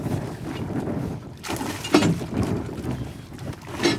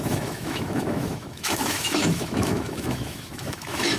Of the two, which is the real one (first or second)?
first